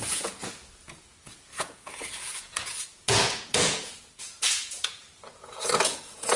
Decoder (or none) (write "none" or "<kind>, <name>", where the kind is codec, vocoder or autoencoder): vocoder, Vocos